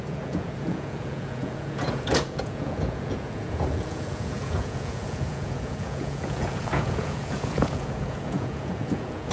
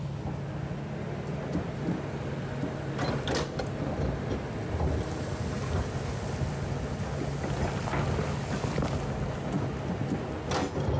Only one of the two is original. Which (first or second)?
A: second